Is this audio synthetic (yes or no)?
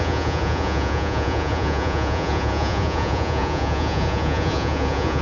yes